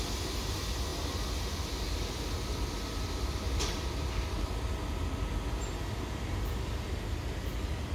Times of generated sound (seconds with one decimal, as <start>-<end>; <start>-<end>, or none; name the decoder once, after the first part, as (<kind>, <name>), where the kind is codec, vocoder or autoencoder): none